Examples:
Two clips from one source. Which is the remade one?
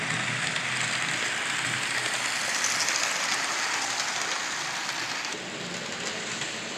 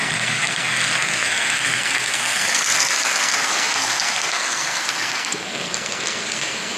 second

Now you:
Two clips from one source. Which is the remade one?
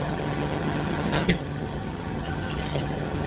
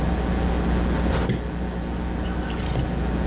first